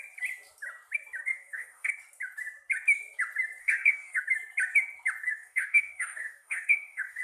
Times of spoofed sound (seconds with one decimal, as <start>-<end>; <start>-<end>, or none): 1.3-1.9; 3.6-4.2; 5.2-7.2